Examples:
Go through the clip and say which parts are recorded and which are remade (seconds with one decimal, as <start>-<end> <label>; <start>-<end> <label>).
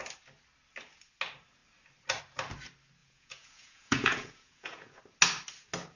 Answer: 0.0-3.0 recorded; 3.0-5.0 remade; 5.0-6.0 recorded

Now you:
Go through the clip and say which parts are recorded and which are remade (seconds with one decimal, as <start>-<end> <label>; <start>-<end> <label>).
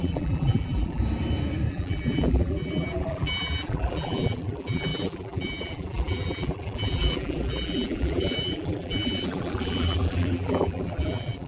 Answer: 0.0-1.0 remade; 1.0-1.7 recorded; 1.7-11.5 remade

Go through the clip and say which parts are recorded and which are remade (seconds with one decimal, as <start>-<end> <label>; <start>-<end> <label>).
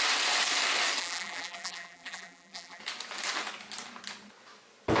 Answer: 0.0-1.0 recorded; 1.0-2.8 remade; 2.8-5.0 recorded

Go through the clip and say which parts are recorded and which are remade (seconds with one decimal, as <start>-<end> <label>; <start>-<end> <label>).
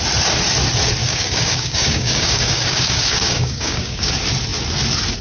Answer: 0.0-1.0 recorded; 1.0-4.1 remade; 4.1-5.2 recorded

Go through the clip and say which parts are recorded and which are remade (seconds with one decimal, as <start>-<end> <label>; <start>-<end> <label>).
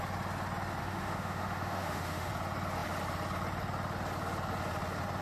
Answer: 0.0-0.8 recorded; 0.8-2.3 remade; 2.3-5.2 recorded